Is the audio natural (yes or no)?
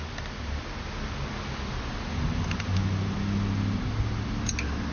yes